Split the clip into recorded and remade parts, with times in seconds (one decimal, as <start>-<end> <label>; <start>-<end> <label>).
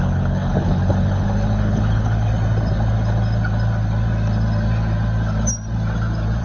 0.0-2.3 remade; 2.3-6.4 recorded